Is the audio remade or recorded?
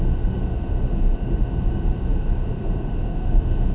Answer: remade